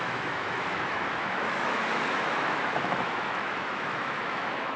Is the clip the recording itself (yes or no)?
no